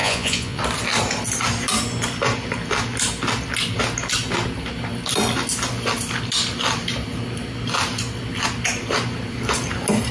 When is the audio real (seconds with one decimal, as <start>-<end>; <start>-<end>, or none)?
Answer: 0.6-10.1